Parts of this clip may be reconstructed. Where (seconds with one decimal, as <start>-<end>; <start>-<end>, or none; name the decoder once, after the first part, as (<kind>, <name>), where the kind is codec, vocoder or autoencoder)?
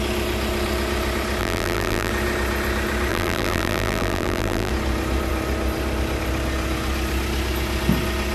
1.4-2.1 (vocoder, BigVGAN v2); 3.1-4.7